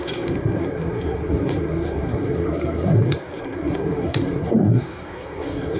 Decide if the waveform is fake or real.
fake